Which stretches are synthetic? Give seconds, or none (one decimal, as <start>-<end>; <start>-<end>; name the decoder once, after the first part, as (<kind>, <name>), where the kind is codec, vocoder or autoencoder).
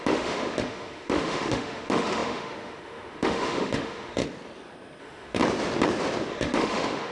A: 0.0-4.2 (autoencoder, DAC-VAE); 5.0-5.4; 6.3-7.1